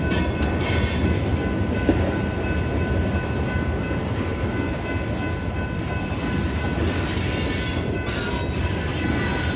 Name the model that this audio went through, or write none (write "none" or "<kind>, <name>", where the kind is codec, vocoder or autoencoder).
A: none